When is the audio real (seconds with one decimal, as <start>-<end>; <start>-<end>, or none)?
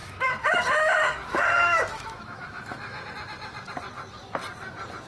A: 3.1-5.1